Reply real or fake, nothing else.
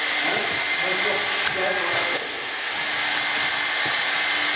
real